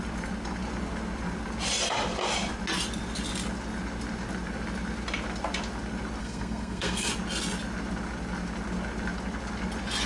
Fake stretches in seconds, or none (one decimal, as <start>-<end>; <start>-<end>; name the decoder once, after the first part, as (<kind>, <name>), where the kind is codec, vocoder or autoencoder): 6.2-7.1 (codec, SNAC)